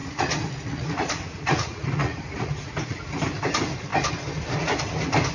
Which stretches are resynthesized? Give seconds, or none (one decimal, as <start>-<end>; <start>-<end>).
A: 0.0-3.2